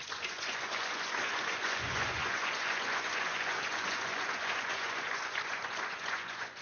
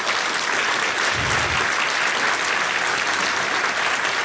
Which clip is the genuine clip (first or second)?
second